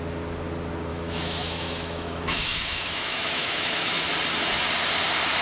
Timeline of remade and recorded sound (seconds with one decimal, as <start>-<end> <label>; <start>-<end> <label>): 0.0-0.9 recorded; 0.9-4.1 remade; 4.1-5.4 recorded